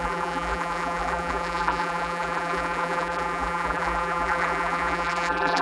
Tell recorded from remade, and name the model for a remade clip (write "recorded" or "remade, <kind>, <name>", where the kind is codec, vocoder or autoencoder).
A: remade, vocoder, BigVGAN v2